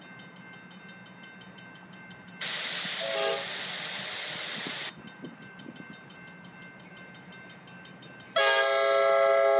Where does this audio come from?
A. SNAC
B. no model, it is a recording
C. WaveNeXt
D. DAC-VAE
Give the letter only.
B